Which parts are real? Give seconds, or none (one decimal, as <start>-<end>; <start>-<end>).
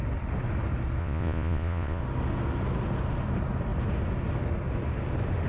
0.0-1.0; 2.0-5.5